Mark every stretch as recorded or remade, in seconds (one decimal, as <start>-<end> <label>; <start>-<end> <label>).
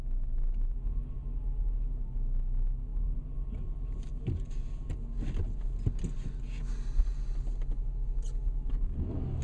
0.0-9.4 recorded